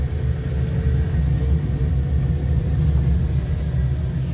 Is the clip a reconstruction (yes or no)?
no